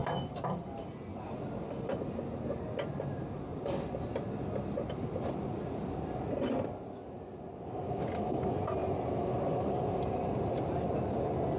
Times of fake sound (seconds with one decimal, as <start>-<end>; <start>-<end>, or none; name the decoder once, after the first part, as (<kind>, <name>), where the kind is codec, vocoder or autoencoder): 0.0-1.3 (vocoder, BigVGAN v2); 3.5-6.2